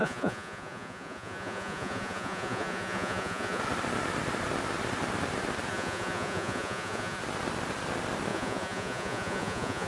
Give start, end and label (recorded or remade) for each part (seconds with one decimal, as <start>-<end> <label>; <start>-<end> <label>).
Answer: 0.0-3.6 remade; 3.6-5.7 recorded; 5.7-7.2 remade; 7.2-8.3 recorded; 8.3-9.9 remade